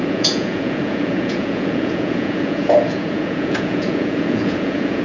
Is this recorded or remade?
remade